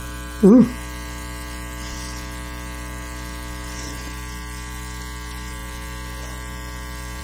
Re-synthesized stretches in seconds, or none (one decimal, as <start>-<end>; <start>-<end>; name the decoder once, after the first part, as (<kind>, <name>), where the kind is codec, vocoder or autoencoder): none